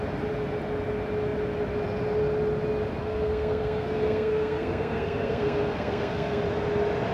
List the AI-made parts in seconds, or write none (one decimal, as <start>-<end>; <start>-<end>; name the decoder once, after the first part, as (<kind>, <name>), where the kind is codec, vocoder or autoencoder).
3.0-6.4 (codec, SNAC)